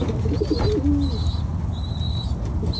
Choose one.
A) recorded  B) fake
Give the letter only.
A